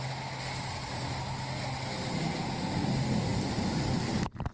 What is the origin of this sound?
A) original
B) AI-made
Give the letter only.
A